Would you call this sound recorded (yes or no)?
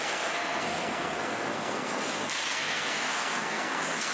no